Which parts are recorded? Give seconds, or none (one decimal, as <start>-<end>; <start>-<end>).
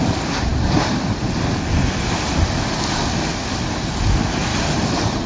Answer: 0.0-5.3